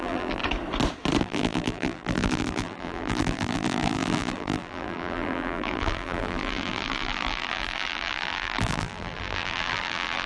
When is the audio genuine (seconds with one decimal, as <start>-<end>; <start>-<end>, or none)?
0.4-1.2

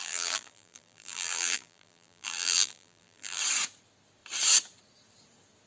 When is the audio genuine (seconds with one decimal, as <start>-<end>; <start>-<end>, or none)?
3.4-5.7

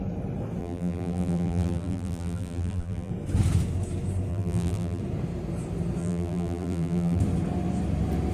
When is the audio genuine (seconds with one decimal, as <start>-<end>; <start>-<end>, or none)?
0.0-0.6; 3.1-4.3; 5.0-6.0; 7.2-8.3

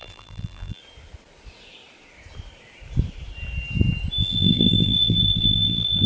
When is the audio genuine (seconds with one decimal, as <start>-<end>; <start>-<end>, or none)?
0.8-4.2

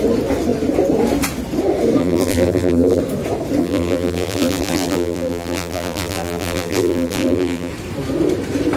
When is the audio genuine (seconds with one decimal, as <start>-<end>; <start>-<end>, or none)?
0.0-2.0; 3.0-3.6; 7.7-8.8

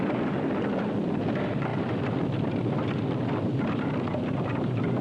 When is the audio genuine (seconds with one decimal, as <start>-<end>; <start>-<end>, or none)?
0.0-1.7; 3.6-5.0

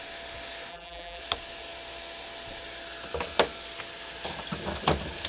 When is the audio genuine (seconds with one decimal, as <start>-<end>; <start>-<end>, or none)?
0.0-0.7; 1.2-5.3